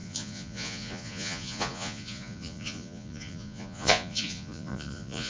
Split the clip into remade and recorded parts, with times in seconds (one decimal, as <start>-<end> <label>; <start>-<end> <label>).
0.0-5.3 remade